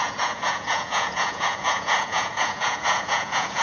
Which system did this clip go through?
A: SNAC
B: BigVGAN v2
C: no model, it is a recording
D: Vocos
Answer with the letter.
D